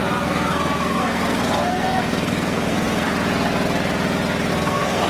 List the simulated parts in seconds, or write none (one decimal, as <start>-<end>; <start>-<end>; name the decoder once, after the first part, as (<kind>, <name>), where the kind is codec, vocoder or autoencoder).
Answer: 0.0-3.1 (codec, SNAC); 4.5-5.1